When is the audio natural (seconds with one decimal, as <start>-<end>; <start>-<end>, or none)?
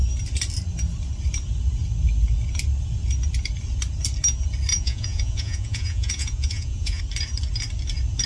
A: 0.0-4.7; 7.0-8.3